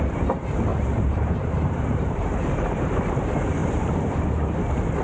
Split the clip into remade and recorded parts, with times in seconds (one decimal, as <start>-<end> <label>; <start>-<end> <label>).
0.0-0.7 recorded; 0.7-3.0 remade; 3.0-3.6 recorded; 3.6-4.2 remade; 4.2-5.0 recorded